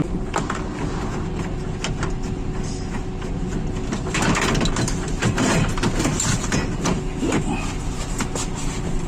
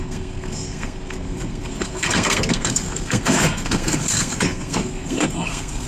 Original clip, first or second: first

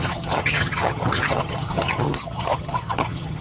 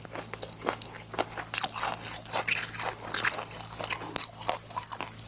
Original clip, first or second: second